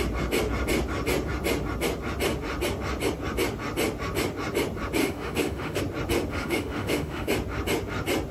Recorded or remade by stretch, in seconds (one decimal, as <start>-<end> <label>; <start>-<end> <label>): 0.0-5.0 recorded; 5.0-5.8 remade; 5.8-6.3 recorded; 6.3-7.3 remade; 7.3-8.3 recorded